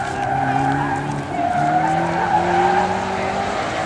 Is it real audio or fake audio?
real